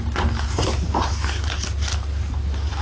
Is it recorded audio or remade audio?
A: recorded